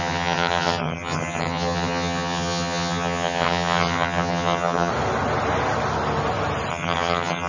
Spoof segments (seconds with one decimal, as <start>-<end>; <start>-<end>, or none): 0.0-4.9; 6.7-7.5